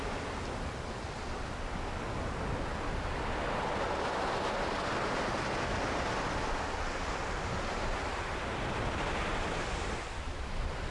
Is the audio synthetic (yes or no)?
no